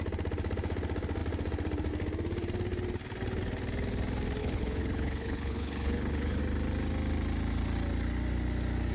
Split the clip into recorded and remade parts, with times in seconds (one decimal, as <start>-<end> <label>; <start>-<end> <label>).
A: 0.0-4.4 recorded; 4.4-6.4 remade; 6.4-8.9 recorded